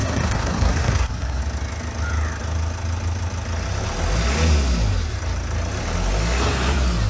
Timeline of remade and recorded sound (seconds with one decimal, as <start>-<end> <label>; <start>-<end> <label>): 0.0-1.4 remade; 1.4-7.1 recorded

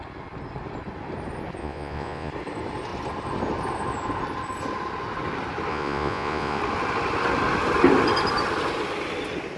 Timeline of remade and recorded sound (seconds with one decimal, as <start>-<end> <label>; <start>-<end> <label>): 0.0-1.6 recorded; 1.6-2.3 remade; 2.3-5.7 recorded; 5.7-6.6 remade; 6.6-9.6 recorded

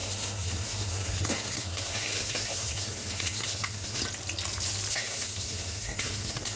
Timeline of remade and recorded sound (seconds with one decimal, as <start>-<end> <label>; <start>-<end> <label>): 0.0-4.0 remade; 4.0-4.9 recorded; 4.9-6.6 remade

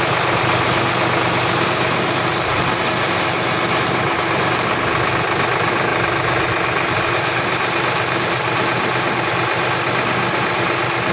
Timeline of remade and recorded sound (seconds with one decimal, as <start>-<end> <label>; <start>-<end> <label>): 0.0-11.1 recorded

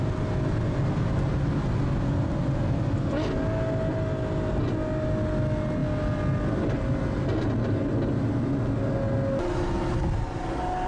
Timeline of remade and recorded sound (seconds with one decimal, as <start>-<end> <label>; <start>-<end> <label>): 0.0-10.9 recorded

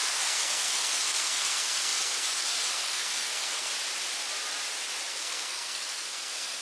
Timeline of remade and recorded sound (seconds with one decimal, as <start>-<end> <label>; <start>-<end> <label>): 0.0-3.7 remade; 3.7-5.1 recorded; 5.1-6.6 remade